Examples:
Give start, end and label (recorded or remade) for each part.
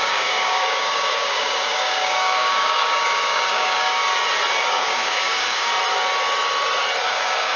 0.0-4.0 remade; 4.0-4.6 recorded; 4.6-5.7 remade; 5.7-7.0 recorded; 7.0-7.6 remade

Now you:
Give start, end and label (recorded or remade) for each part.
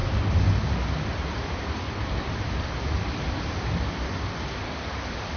0.0-5.4 recorded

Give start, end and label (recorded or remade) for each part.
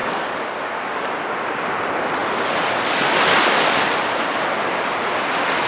0.0-1.1 remade; 1.1-5.7 recorded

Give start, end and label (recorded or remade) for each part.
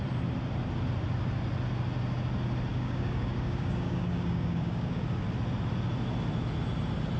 0.0-2.7 recorded; 2.7-5.0 remade; 5.0-7.2 recorded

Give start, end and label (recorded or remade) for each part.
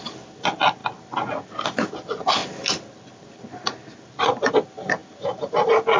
0.0-6.0 recorded